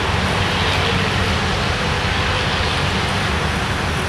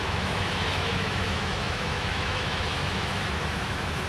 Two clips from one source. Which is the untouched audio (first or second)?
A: first